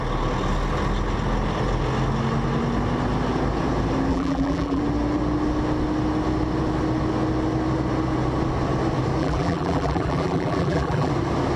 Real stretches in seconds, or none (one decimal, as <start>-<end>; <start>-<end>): 0.0-4.1; 4.8-9.2; 11.1-11.6